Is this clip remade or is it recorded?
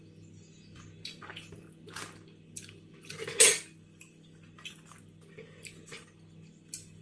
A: recorded